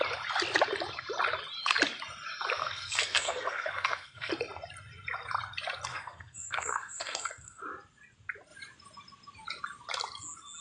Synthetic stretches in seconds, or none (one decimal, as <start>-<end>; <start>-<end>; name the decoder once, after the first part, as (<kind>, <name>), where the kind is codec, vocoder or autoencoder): 2.6-4.3 (codec, SNAC); 5.9-7.6